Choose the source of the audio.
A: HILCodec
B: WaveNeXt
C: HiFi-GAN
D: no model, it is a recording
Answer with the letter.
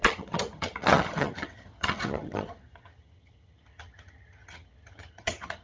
C